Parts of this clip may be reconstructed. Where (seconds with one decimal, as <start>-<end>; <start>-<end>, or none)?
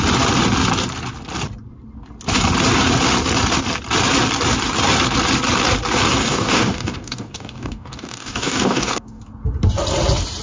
6.2-9.2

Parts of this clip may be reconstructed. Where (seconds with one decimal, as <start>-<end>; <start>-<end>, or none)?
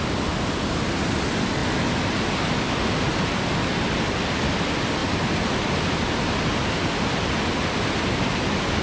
none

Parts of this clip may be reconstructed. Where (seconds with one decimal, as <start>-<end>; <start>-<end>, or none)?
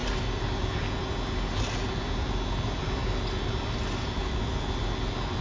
none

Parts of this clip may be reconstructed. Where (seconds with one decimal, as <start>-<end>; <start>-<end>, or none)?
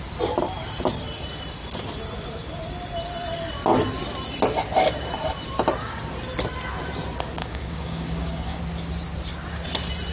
7.4-8.6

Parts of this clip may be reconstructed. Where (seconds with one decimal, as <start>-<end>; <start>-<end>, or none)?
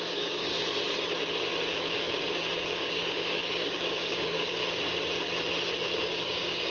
0.0-0.5; 2.6-4.6; 6.0-6.7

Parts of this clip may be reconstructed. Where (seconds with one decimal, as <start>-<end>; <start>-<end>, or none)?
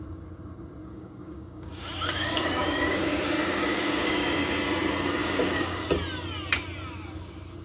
0.8-4.5; 5.2-5.9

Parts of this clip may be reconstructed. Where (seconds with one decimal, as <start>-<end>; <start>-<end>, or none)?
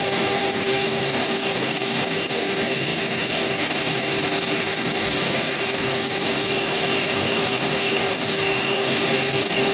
0.0-9.7